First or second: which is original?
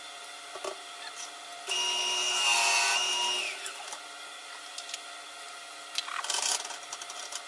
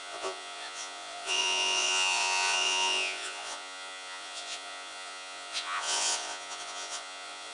first